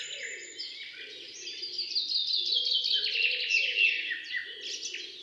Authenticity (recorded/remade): recorded